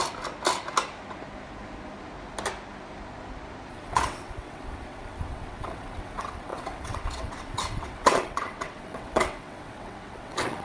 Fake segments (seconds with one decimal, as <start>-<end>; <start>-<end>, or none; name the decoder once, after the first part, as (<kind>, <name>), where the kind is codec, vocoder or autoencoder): 3.7-10.6 (vocoder, WaveNeXt)